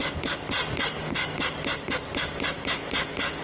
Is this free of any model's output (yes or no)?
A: yes